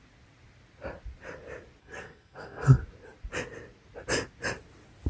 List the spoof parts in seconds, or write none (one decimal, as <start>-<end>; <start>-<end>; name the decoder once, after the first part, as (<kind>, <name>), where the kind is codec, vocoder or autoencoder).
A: 1.8-2.8 (codec, SNAC)